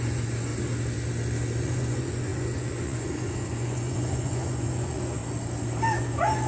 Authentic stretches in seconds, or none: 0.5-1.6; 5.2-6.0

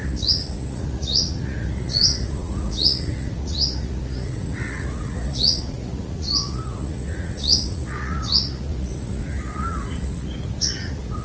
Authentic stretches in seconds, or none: none

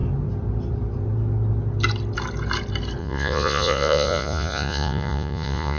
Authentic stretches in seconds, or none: 0.0-3.0

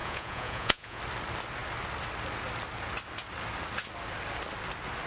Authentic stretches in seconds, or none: 1.0-5.1